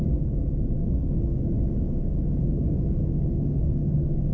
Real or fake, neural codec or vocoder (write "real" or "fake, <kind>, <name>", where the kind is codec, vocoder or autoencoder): fake, codec, DAC